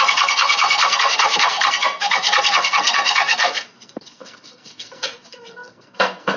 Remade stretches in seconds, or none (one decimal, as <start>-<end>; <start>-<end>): 0.0-6.4